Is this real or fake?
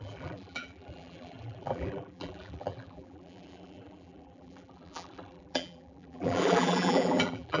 fake